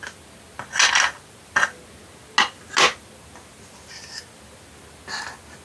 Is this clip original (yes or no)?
yes